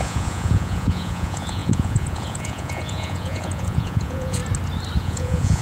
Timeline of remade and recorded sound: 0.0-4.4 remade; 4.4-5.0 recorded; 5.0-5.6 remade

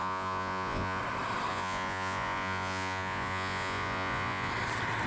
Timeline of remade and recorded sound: 0.0-1.0 remade; 1.0-1.5 recorded; 1.5-4.5 remade; 4.5-5.1 recorded

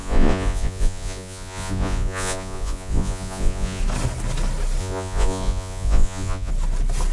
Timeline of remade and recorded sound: 0.0-3.8 remade; 3.8-4.8 recorded; 4.8-6.5 remade; 6.5-7.1 recorded

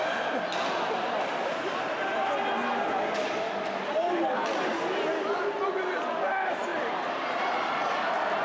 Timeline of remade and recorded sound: 0.0-8.4 recorded

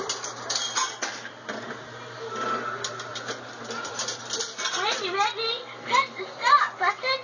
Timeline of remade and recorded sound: 0.0-7.2 recorded

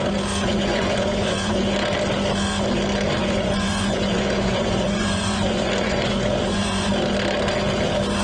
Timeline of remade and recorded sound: 0.0-0.4 recorded; 0.4-1.6 remade; 1.6-3.2 recorded; 3.2-6.9 remade; 6.9-8.2 recorded